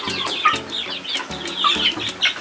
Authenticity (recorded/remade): recorded